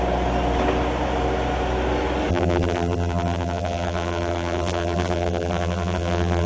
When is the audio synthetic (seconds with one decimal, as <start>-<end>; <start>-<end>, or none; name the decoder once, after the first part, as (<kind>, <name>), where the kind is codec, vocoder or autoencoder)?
2.3-6.5 (vocoder, BigVGAN v2)